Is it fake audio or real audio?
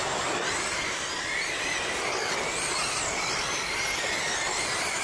real